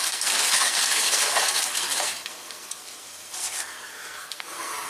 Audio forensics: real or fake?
fake